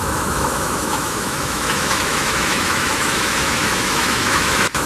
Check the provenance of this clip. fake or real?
fake